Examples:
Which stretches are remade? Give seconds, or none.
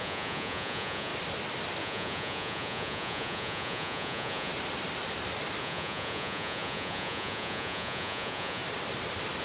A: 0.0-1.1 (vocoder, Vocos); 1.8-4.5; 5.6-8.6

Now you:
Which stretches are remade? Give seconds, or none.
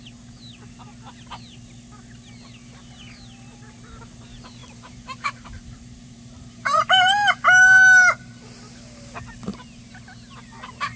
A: 4.6-7.4 (vocoder, BigVGAN v2)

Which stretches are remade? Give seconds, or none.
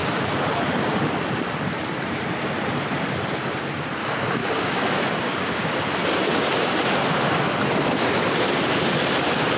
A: 4.4-5.8 (codec, DAC)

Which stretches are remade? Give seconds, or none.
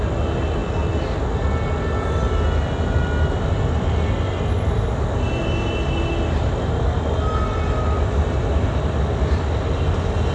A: none